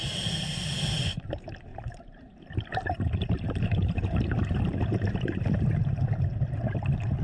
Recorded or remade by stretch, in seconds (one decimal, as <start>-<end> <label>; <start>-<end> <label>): 0.0-1.7 recorded; 1.7-5.2 remade; 5.2-7.2 recorded